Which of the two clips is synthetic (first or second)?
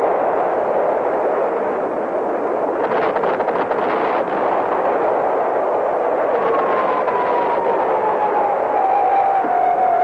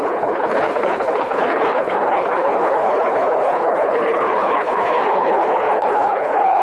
second